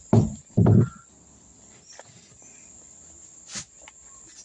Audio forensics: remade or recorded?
recorded